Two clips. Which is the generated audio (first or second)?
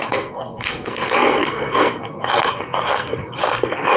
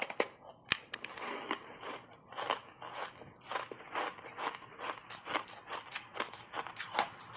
first